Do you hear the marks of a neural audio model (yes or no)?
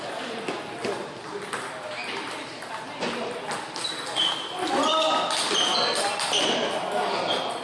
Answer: no